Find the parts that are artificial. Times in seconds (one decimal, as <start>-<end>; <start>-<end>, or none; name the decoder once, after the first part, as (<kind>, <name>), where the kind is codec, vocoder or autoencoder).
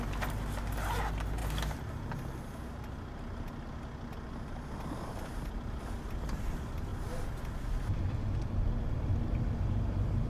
none